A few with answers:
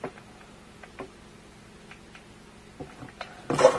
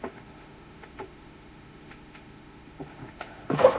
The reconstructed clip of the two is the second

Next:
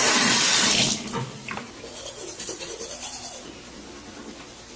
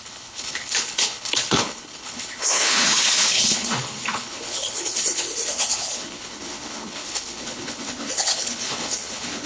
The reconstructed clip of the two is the second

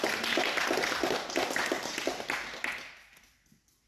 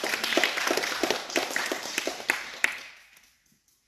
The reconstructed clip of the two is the second